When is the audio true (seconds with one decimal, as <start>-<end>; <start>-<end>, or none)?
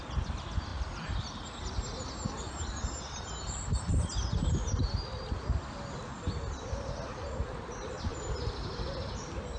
0.0-9.6